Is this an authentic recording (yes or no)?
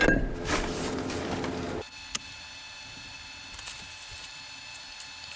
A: yes